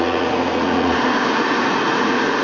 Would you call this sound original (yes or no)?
no